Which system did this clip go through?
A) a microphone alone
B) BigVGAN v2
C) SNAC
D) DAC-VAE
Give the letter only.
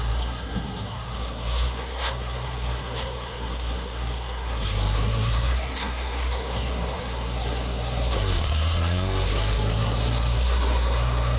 C